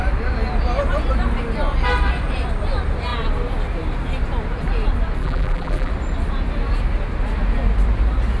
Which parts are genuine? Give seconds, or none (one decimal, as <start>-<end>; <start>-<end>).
0.0-5.2; 5.9-8.4